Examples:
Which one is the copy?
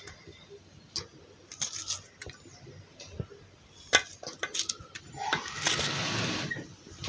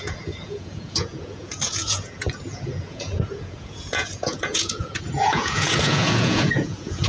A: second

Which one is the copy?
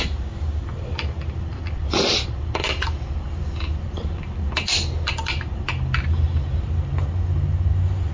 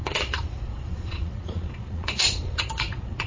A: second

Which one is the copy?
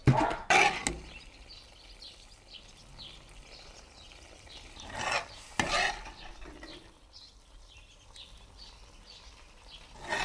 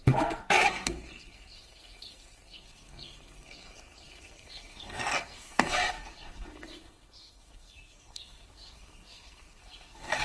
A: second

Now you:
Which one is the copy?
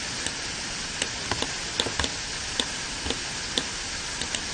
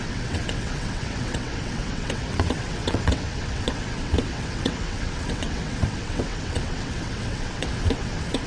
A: second